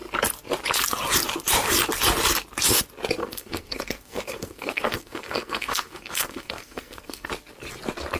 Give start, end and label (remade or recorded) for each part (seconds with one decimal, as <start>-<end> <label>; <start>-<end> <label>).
0.0-3.2 recorded; 3.2-7.3 remade; 7.3-8.2 recorded